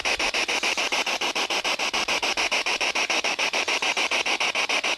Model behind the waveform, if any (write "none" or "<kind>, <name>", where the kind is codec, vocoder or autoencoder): vocoder, BigVGAN v2